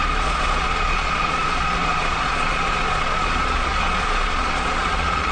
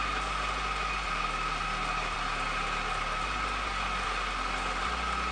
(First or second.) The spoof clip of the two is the first